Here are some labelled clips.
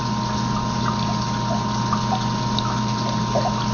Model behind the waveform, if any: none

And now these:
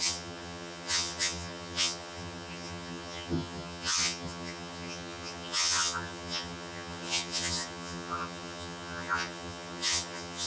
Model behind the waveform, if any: vocoder, HiFi-GAN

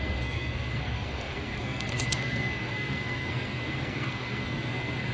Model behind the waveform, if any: codec, SNAC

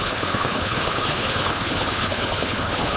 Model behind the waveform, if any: codec, HILCodec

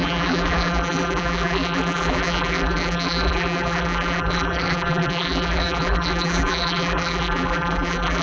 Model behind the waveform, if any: vocoder, BigVGAN v2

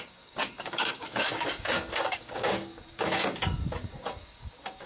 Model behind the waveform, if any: codec, DAC